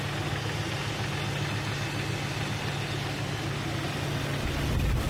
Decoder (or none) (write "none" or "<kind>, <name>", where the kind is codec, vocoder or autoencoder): none